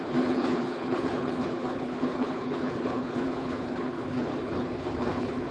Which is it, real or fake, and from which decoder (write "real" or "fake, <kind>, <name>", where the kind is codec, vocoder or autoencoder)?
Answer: fake, codec, HILCodec